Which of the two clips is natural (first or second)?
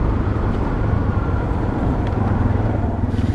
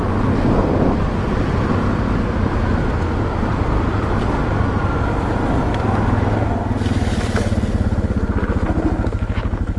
second